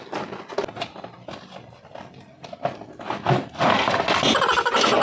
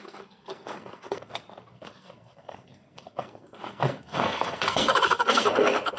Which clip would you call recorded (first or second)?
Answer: first